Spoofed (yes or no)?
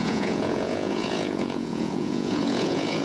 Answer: yes